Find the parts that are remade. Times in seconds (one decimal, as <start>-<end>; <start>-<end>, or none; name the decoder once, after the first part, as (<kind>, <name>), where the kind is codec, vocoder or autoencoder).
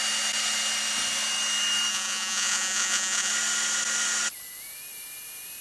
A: 1.9-3.3 (vocoder, Vocos)